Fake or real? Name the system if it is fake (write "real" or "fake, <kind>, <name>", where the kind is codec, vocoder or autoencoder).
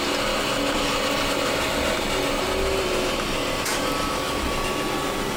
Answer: real